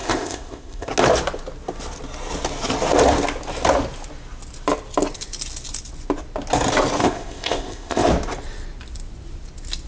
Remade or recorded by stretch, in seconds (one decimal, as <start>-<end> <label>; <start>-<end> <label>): 0.0-0.9 remade; 0.9-7.0 recorded; 7.0-8.1 remade; 8.1-9.9 recorded